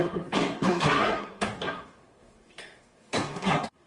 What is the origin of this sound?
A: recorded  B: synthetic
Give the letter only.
B